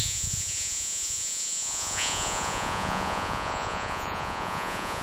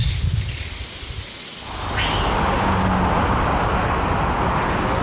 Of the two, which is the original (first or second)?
second